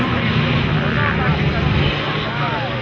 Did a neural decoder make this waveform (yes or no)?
no